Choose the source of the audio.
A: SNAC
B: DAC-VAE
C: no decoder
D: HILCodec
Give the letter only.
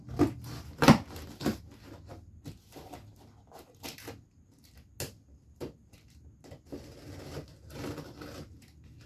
C